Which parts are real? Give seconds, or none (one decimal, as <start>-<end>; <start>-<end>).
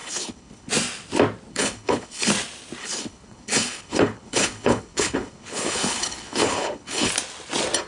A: 0.7-1.5; 2.3-2.8; 7.1-7.9